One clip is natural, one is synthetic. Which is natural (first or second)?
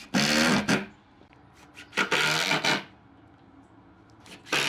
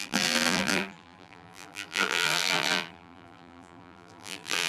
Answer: first